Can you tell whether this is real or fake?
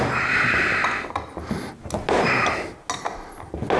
real